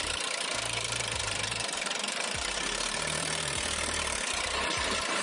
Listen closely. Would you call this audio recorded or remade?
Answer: remade